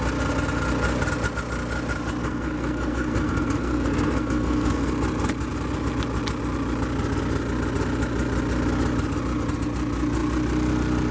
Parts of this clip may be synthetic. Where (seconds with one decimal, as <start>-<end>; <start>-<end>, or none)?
2.2-4.9